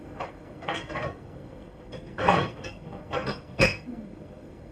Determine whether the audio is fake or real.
fake